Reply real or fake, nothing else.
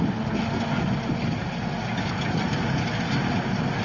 real